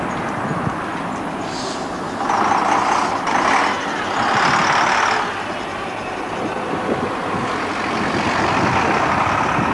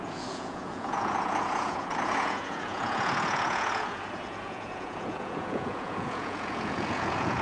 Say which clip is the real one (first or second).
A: first